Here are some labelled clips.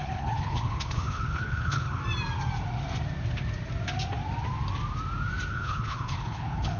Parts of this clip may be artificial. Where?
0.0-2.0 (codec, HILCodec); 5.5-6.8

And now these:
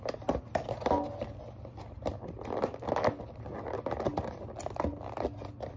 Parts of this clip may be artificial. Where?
none